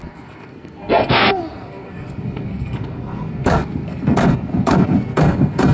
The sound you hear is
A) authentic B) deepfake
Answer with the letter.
B